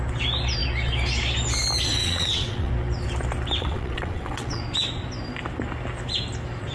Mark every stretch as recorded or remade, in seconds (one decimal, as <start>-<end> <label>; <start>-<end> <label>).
0.0-2.0 recorded; 2.0-2.7 remade; 2.7-3.6 recorded; 3.6-4.6 remade; 4.6-6.7 recorded